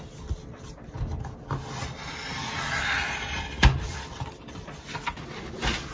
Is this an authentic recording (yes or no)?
yes